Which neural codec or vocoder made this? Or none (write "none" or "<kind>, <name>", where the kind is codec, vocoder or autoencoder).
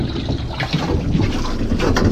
none